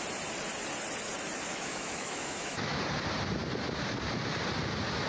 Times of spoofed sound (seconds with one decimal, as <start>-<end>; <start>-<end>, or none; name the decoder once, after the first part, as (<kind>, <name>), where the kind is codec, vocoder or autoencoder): 1.5-2.8 (autoencoder, DAC-VAE)